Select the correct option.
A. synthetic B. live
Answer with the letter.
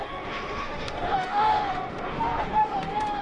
A